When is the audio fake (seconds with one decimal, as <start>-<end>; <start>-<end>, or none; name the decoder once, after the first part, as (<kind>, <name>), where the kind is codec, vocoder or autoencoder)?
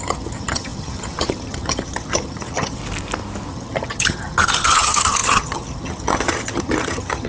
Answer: 0.0-2.8 (vocoder, HiFi-GAN); 3.5-7.3